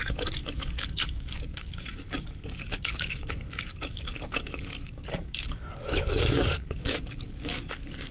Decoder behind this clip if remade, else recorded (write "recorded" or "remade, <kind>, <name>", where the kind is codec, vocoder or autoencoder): remade, codec, DAC